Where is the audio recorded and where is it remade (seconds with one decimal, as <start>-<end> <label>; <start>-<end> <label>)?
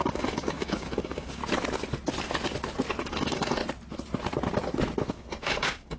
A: 0.0-1.4 remade; 1.4-3.0 recorded; 3.0-3.6 remade; 3.6-5.1 recorded; 5.1-6.0 remade